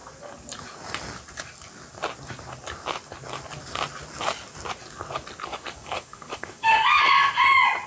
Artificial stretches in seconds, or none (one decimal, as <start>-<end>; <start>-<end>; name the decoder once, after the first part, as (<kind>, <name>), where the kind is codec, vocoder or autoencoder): 5.5-7.0 (codec, DAC)